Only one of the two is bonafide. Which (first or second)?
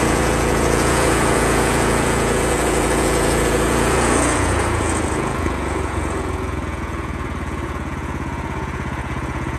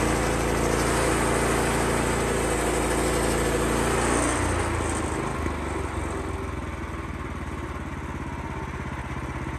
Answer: second